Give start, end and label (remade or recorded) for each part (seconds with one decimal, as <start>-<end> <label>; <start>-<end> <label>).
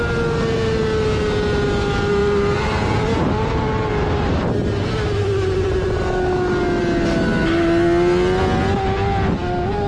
0.0-9.9 recorded